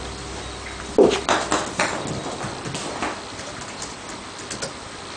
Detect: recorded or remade recorded